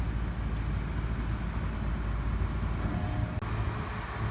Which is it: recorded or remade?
recorded